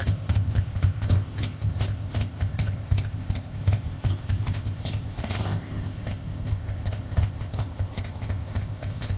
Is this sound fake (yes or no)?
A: yes